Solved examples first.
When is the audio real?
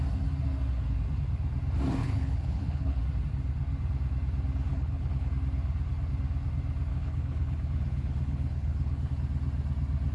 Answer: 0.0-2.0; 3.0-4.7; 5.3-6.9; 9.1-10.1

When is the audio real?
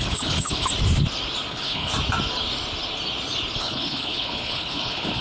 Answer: 0.7-1.5; 1.9-3.6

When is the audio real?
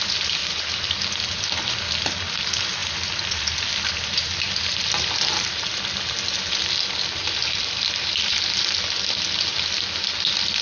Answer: 0.0-10.6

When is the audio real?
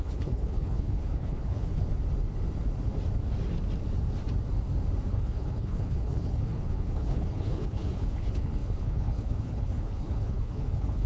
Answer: 1.9-5.1